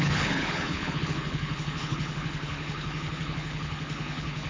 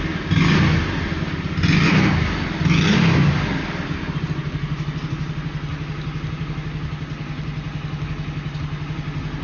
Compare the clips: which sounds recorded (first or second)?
second